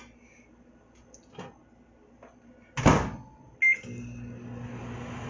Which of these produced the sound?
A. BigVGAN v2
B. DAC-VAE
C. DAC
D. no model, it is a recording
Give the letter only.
D